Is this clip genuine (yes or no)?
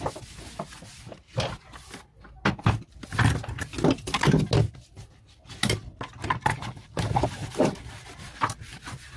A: yes